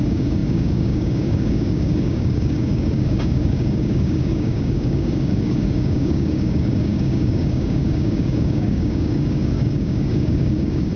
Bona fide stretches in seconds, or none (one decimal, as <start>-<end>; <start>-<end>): none